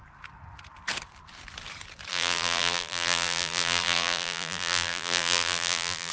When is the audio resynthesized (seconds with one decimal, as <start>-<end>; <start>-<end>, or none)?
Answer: 2.1-6.1